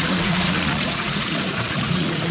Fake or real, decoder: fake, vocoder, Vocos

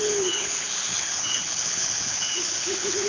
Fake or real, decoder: fake, codec, HILCodec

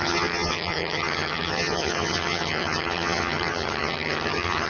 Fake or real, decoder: fake, vocoder, HiFi-GAN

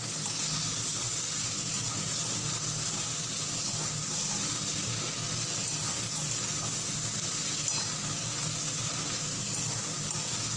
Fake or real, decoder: real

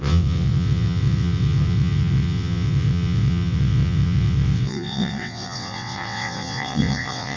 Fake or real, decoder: fake, vocoder, WaveNeXt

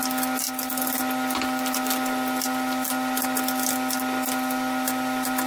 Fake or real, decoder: real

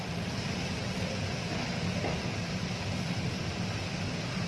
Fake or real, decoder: real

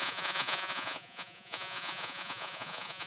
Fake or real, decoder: fake, vocoder, Vocos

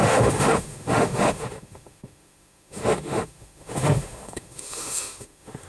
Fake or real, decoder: fake, autoencoder, DAC-VAE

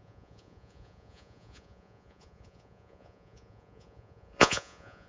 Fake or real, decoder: fake, vocoder, Vocos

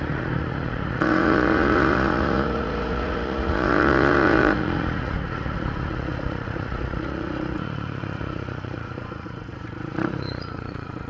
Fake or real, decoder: fake, vocoder, Vocos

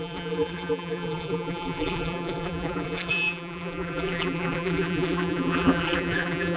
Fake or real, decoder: fake, vocoder, BigVGAN v2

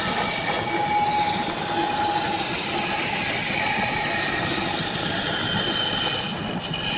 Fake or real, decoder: real